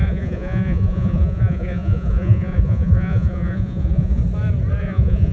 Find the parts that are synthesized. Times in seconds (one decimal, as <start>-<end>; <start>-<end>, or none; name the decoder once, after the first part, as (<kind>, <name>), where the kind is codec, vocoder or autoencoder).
0.0-4.2 (vocoder, Vocos); 4.8-5.3